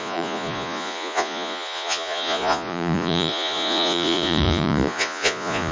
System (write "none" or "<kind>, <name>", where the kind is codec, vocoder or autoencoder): vocoder, Vocos